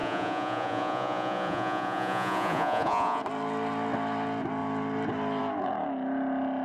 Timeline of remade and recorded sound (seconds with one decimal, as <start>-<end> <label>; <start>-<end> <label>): 0.0-3.2 remade; 3.2-6.6 recorded